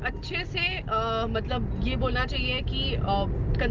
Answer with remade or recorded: recorded